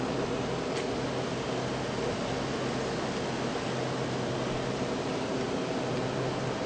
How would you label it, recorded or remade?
recorded